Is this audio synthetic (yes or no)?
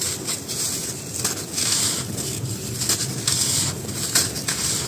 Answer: no